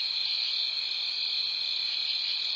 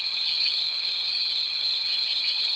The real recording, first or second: first